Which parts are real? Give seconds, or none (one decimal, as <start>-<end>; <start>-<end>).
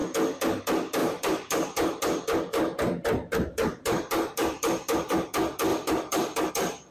0.0-1.0; 5.1-5.7; 6.5-6.9